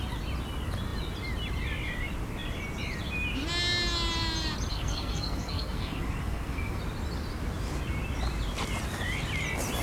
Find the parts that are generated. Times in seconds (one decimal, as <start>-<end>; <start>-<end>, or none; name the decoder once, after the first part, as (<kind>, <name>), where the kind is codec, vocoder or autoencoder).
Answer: 4.7-6.8 (codec, SNAC)